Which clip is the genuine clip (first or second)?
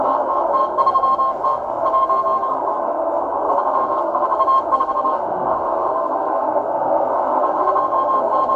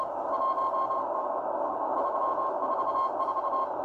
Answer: second